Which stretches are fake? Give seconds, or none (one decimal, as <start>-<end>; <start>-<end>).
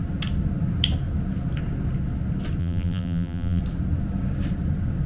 2.6-3.6